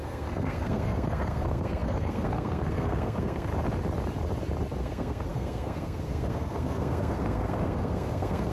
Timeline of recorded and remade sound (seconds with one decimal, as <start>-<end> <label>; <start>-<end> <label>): 0.0-3.5 remade; 3.5-4.8 recorded; 4.8-8.5 remade

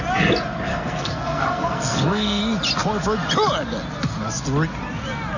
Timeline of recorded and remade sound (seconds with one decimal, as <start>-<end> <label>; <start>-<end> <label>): 0.0-0.7 recorded; 0.7-2.4 remade; 2.4-5.4 recorded

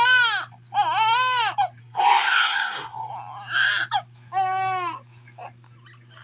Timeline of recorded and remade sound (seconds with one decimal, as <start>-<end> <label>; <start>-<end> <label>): 0.0-1.8 recorded; 1.8-3.1 remade; 3.1-6.2 recorded

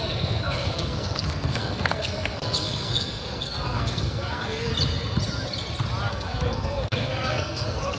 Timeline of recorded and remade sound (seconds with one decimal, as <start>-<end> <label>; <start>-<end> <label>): 0.0-4.7 remade; 4.7-6.1 recorded; 6.1-8.0 remade

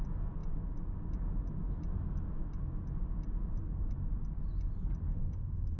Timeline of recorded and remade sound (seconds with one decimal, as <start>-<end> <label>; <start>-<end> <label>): 0.0-5.1 recorded; 5.1-5.8 remade

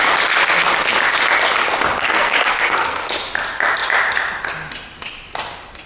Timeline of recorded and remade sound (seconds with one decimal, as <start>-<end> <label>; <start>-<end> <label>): 0.0-2.0 recorded; 2.0-3.0 remade; 3.0-5.9 recorded

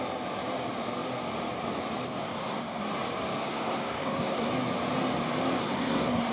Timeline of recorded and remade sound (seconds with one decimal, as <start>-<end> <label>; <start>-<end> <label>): 0.0-2.2 recorded; 2.2-2.8 remade; 2.8-3.4 recorded; 3.4-4.5 remade; 4.5-5.6 recorded; 5.6-6.3 remade

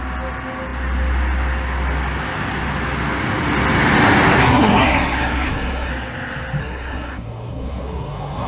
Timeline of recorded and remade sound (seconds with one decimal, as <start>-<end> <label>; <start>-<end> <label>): 0.0-4.4 recorded; 4.4-5.9 remade; 5.9-6.6 recorded; 6.6-8.5 remade